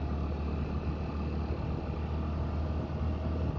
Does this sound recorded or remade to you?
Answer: recorded